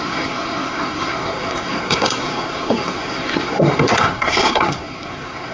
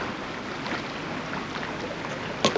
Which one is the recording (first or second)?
second